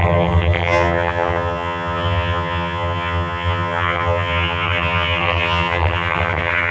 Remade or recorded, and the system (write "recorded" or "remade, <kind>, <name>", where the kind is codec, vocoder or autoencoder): remade, vocoder, HiFi-GAN